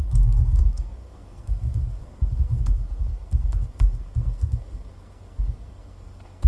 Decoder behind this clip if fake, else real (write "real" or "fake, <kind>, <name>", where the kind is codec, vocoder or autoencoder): fake, codec, SNAC